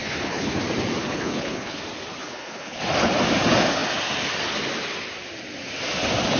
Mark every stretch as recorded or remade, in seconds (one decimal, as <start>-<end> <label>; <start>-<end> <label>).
0.0-0.6 remade; 0.6-1.0 recorded; 1.0-1.8 remade; 1.8-2.2 recorded; 2.2-2.8 remade; 2.8-6.4 recorded

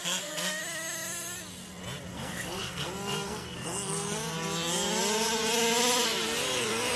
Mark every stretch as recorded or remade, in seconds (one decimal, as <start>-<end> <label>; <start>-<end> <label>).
0.0-0.6 remade; 0.6-2.1 recorded; 2.1-4.2 remade; 4.2-7.0 recorded

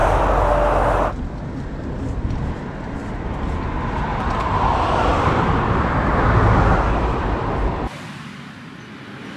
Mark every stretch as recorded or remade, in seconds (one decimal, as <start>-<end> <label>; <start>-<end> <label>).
0.0-5.1 recorded; 5.1-7.9 remade; 7.9-9.4 recorded